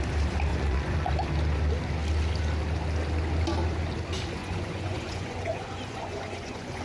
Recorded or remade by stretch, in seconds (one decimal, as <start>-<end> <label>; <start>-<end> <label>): 0.0-0.5 recorded; 0.5-1.1 remade; 1.1-4.4 recorded; 4.4-6.8 remade